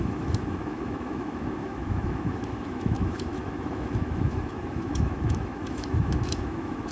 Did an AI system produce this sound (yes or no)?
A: yes